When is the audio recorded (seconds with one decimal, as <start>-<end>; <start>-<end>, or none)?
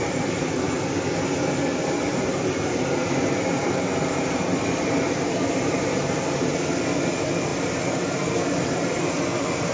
0.0-2.1; 6.0-7.5; 9.0-9.7